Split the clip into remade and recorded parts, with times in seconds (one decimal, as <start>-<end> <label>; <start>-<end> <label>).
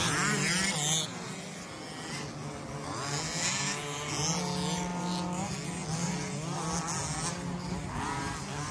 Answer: 0.0-8.7 recorded